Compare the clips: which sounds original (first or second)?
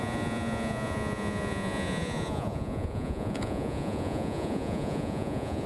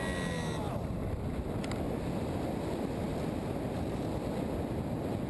second